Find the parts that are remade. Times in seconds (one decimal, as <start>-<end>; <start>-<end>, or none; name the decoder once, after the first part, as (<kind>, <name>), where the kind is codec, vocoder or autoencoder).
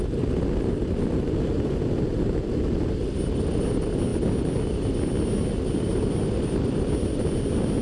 none